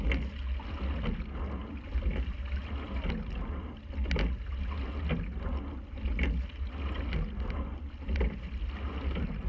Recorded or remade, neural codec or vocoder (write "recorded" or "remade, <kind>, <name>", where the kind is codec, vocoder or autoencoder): recorded